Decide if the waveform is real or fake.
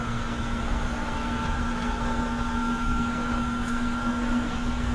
fake